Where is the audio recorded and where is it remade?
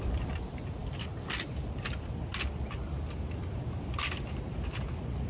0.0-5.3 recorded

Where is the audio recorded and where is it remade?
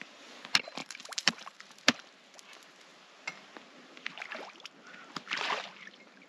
0.0-0.8 recorded; 0.8-1.6 remade; 1.6-6.3 recorded